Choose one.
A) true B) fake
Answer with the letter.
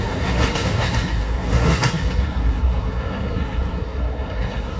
B